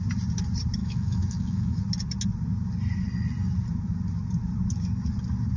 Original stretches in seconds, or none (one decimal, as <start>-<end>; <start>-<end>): 0.0-0.8; 1.8-5.6